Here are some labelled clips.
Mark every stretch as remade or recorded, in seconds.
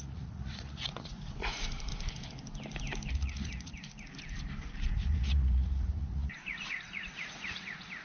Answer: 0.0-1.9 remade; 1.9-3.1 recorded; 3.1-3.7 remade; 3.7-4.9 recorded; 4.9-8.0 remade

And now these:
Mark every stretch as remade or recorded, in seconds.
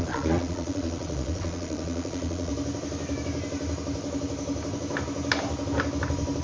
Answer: 0.0-2.5 remade; 2.5-6.4 recorded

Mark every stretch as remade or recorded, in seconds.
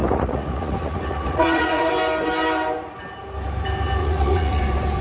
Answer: 0.0-1.9 remade; 1.9-4.0 recorded; 4.0-4.6 remade; 4.6-5.0 recorded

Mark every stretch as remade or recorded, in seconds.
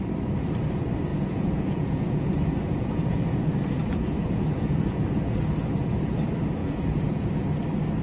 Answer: 0.0-1.1 recorded; 1.1-5.5 remade; 5.5-6.6 recorded; 6.6-7.4 remade; 7.4-8.0 recorded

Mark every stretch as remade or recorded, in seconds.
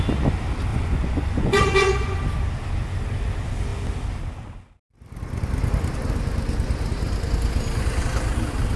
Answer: 0.0-0.7 recorded; 0.7-2.2 remade; 2.2-8.8 recorded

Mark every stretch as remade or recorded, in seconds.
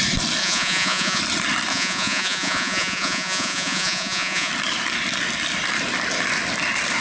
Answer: 0.0-0.4 recorded; 0.4-1.2 remade; 1.2-1.7 recorded; 1.7-4.5 remade; 4.5-7.0 recorded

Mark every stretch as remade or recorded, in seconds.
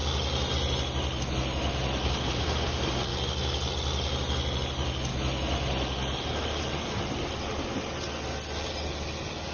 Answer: 0.0-9.5 recorded